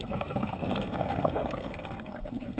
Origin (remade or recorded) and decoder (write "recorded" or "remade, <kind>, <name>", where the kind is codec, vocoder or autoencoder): remade, codec, SNAC